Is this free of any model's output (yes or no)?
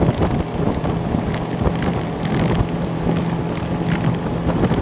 yes